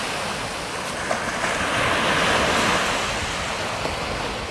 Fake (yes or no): no